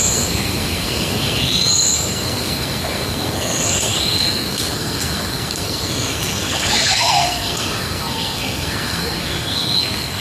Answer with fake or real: fake